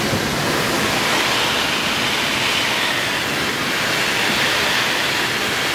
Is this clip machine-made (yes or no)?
no